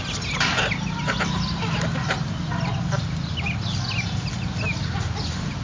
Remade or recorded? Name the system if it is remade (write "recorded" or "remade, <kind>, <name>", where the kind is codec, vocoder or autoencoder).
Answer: recorded